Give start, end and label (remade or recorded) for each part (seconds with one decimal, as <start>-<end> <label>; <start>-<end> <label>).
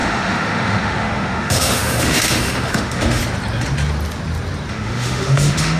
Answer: 0.0-3.2 remade; 3.2-4.7 recorded; 4.7-5.8 remade